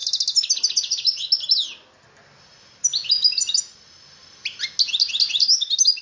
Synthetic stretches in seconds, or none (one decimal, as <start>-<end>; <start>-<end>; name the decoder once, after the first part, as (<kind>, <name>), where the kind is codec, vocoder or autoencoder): none